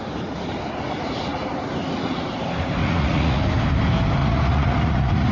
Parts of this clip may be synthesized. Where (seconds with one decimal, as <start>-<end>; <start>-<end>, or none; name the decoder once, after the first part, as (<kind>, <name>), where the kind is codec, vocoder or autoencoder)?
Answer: 2.8-3.4 (vocoder, Vocos); 4.2-5.3